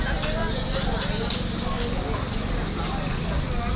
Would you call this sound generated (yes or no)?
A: no